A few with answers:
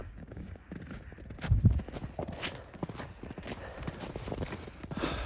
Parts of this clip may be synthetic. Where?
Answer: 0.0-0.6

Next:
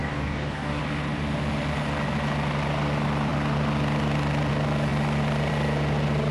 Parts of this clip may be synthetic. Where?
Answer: 0.0-0.8

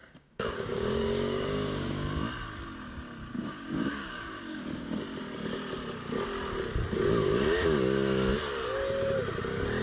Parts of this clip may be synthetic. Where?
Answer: 0.0-2.1; 3.2-5.0

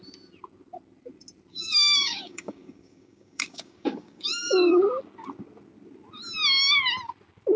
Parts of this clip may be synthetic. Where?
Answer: 1.5-4.8

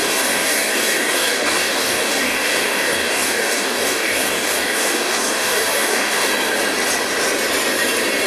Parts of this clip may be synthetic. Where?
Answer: 0.0-6.3